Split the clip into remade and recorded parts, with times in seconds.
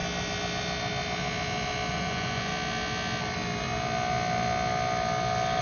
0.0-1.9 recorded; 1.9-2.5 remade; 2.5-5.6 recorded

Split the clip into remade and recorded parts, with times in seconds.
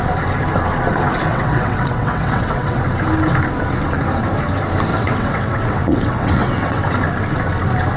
0.0-1.3 recorded; 1.3-2.8 remade; 2.8-4.9 recorded; 4.9-6.8 remade; 6.8-8.0 recorded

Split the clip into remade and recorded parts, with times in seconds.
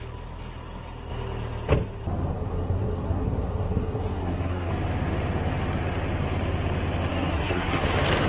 0.0-2.3 recorded; 2.3-4.7 remade; 4.7-7.1 recorded; 7.1-7.8 remade; 7.8-8.3 recorded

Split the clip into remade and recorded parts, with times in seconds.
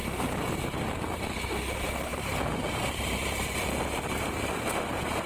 0.0-2.1 recorded; 2.1-5.3 remade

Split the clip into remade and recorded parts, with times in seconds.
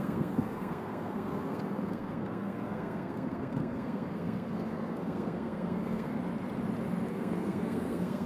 0.0-6.1 remade; 6.1-7.1 recorded; 7.1-8.3 remade